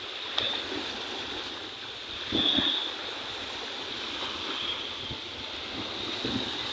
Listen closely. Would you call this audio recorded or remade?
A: recorded